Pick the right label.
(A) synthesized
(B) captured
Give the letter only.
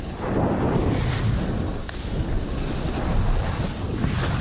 B